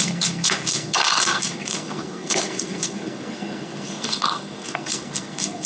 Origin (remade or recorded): remade